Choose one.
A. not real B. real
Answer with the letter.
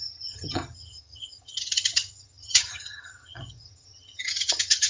A